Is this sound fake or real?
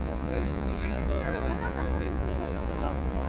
fake